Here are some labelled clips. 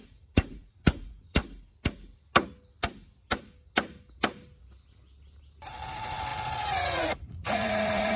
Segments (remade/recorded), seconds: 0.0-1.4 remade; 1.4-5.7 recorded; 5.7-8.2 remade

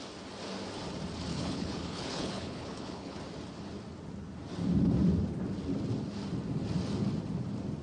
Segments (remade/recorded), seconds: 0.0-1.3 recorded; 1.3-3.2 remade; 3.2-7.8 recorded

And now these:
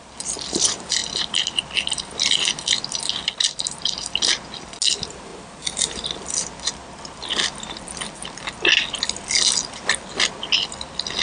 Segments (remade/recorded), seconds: 0.0-11.2 recorded

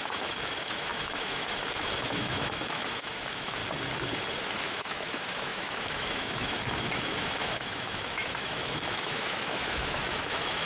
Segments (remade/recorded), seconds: 0.0-3.6 remade; 3.6-4.6 recorded; 4.6-10.7 remade

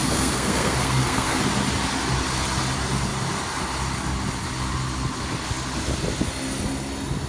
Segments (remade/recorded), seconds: 0.0-1.4 remade; 1.4-7.3 recorded

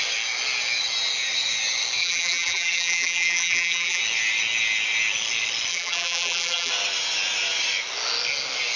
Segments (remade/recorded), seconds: 0.0-2.0 recorded; 2.0-4.0 remade; 4.0-5.7 recorded; 5.7-6.7 remade; 6.7-8.8 recorded

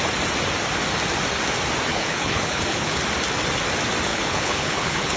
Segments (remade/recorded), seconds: 0.0-1.9 recorded; 1.9-3.0 remade; 3.0-4.1 recorded; 4.1-5.2 remade